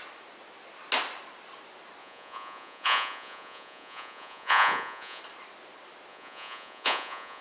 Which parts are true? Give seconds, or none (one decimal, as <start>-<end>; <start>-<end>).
0.0-2.0; 5.2-6.1